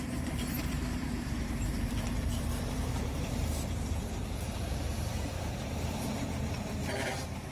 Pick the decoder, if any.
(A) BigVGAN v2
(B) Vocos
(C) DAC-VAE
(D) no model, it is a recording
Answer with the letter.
A